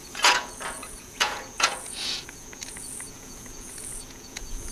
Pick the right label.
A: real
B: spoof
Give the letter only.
B